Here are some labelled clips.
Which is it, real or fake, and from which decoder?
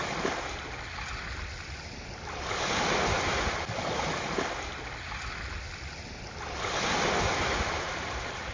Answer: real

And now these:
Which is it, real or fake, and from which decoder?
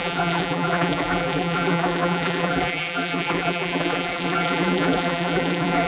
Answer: fake, vocoder, BigVGAN v2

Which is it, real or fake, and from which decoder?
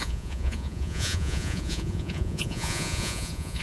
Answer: fake, vocoder, Vocos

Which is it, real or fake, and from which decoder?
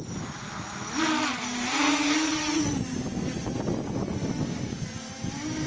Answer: real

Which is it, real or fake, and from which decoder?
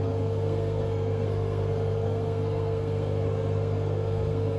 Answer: fake, codec, SNAC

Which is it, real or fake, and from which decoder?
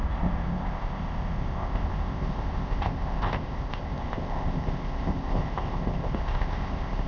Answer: fake, codec, ZipCodec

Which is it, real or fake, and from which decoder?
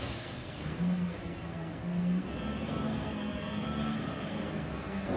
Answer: fake, codec, SNAC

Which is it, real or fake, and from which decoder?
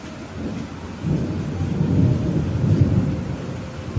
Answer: real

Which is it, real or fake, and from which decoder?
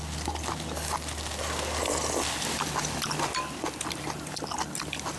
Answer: real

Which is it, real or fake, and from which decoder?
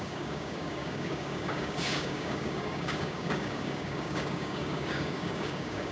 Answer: fake, codec, DAC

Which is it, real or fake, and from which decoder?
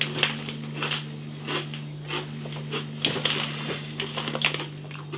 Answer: real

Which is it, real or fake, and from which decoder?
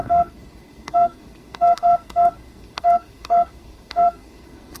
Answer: fake, codec, SNAC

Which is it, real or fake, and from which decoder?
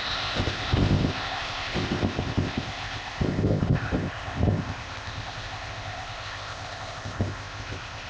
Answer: fake, codec, ZipCodec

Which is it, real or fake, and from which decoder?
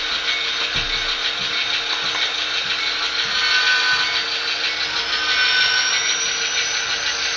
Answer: real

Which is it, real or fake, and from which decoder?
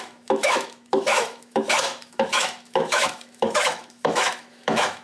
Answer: fake, autoencoder, DAC-VAE